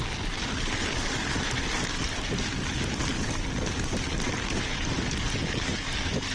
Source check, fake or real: real